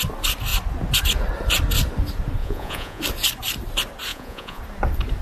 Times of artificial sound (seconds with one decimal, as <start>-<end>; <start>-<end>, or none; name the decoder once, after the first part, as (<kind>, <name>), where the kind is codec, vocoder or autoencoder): 2.4-3.0 (vocoder, Vocos); 4.1-4.6